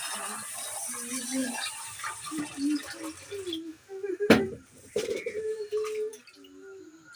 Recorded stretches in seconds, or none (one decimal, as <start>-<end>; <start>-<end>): 0.0-1.4; 2.4-4.1; 5.7-7.2